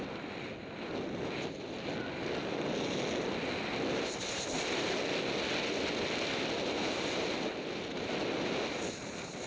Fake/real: real